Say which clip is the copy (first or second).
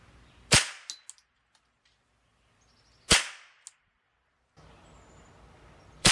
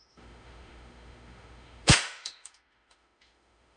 second